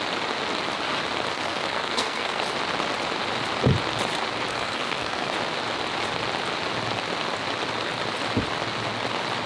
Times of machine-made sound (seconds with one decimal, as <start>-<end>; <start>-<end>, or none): 1.3-2.4; 4.5-5.3